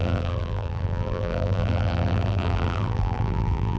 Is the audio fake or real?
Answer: fake